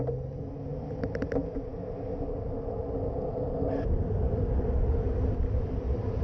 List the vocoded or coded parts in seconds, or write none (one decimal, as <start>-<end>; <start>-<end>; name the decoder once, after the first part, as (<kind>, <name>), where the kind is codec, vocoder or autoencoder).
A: none